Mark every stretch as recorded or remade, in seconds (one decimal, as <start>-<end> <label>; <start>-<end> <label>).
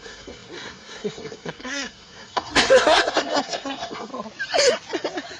0.0-4.1 remade; 4.1-5.4 recorded